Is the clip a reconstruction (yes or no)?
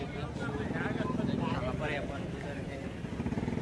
no